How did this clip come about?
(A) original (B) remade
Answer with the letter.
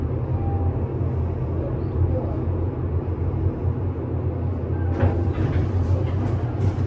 A